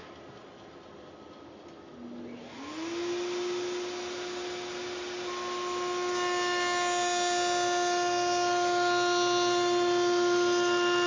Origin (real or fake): real